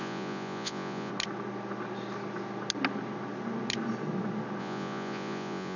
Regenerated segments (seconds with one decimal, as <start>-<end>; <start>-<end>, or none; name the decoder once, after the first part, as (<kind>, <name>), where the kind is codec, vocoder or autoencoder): 0.0-1.1 (vocoder, Vocos); 4.6-5.8